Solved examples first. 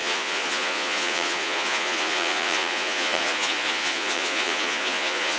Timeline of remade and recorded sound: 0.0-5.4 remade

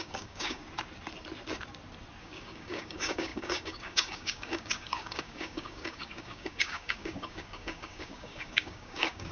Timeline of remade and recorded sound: 0.0-0.6 remade; 0.6-2.2 recorded; 2.2-9.3 remade

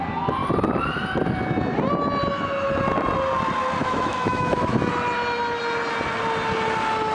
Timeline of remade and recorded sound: 0.0-3.8 recorded; 3.8-4.9 remade; 4.9-7.1 recorded

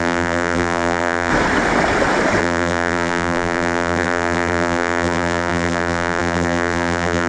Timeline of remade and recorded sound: 0.0-1.3 remade; 1.3-2.4 recorded; 2.4-7.3 remade